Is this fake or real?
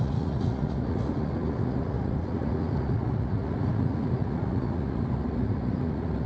fake